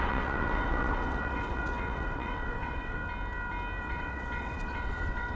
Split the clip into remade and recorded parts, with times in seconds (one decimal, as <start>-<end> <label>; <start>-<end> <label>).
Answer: 0.0-3.0 remade; 3.0-3.8 recorded; 3.8-5.4 remade